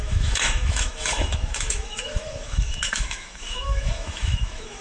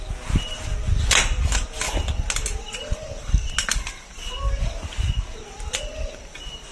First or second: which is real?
second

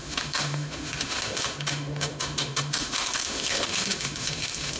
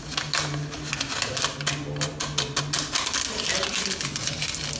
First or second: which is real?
second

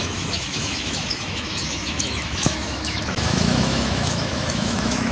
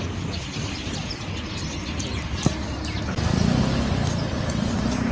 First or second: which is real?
second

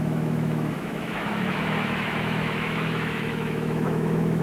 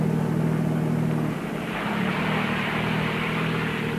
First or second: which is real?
second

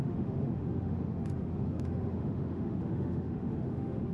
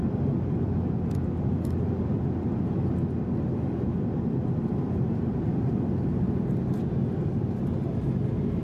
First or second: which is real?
second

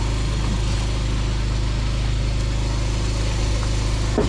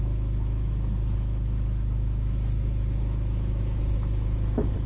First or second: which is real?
first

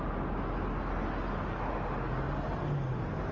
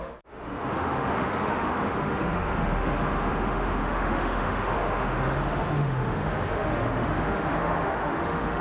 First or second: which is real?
first